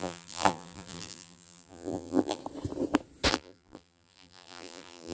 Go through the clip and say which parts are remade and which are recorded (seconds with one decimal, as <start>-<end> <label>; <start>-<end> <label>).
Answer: 0.0-2.4 remade; 2.4-3.3 recorded; 3.3-5.1 remade